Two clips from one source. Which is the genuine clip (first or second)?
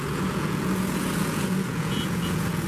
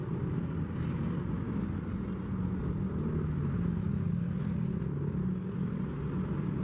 second